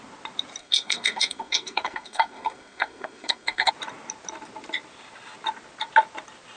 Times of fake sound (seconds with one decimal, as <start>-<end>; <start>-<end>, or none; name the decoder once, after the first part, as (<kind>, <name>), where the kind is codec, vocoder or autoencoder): 0.6-3.7 (codec, SNAC)